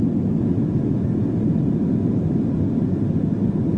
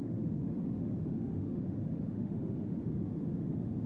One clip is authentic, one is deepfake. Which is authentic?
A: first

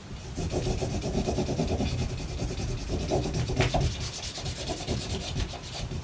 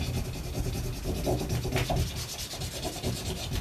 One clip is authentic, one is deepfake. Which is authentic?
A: second